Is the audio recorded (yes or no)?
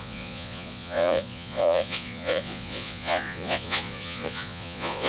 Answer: no